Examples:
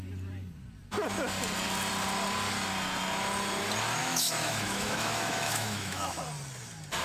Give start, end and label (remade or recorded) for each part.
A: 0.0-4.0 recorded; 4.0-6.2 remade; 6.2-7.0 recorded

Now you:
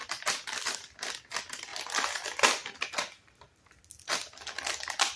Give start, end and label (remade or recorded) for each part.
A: 0.0-5.2 recorded

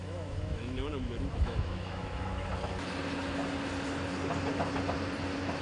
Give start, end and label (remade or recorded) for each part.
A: 0.0-2.5 remade; 2.5-5.6 recorded

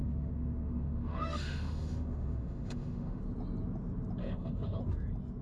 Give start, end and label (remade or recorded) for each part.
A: 0.0-3.2 remade; 3.2-4.2 recorded; 4.2-4.8 remade; 4.8-5.4 recorded

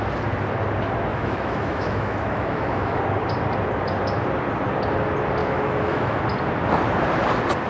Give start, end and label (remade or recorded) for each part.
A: 0.0-1.1 recorded; 1.1-3.0 remade; 3.0-5.4 recorded; 5.4-6.2 remade; 6.2-7.7 recorded